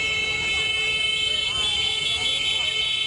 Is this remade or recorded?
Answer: recorded